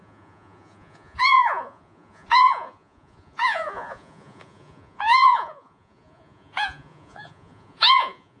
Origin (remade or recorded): remade